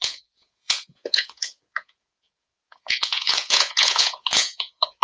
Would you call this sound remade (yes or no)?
yes